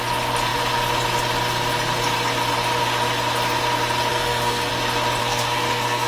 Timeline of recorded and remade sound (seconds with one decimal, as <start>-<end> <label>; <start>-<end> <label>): 0.0-4.1 recorded; 4.1-4.7 remade; 4.7-5.2 recorded; 5.2-6.1 remade